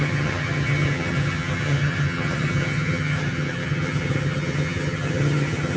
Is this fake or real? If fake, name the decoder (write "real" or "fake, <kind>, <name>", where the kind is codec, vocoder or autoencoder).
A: fake, vocoder, HiFi-GAN